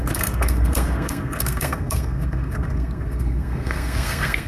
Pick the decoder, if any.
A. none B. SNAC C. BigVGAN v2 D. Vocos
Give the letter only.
B